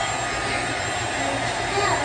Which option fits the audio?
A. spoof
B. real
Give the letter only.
B